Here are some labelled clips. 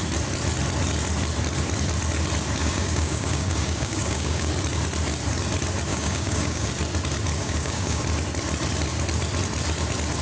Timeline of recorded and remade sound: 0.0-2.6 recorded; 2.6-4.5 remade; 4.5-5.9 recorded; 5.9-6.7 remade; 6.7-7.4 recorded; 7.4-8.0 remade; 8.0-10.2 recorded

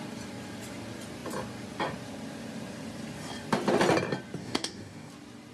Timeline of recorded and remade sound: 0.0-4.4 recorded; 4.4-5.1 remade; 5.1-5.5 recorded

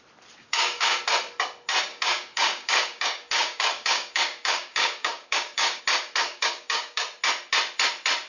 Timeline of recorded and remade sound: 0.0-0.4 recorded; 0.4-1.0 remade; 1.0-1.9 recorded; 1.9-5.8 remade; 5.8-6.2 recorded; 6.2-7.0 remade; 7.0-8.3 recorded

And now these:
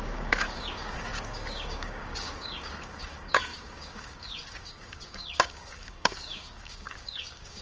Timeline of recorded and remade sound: 0.0-7.6 remade

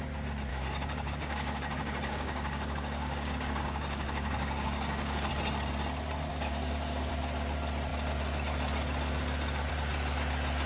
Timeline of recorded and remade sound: 0.0-0.5 recorded; 0.5-5.3 remade; 5.3-6.3 recorded; 6.3-7.1 remade; 7.1-10.7 recorded

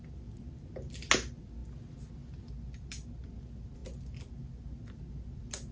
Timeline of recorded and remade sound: 0.0-5.7 recorded

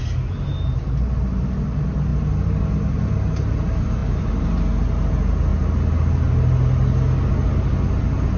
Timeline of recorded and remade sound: 0.0-8.4 recorded